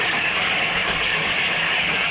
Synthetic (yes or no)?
yes